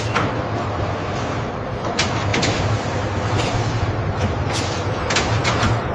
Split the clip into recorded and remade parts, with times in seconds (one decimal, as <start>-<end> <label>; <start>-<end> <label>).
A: 0.0-5.9 recorded